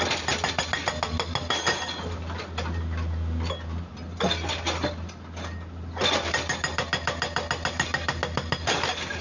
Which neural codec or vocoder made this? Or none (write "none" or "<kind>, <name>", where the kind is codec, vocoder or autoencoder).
none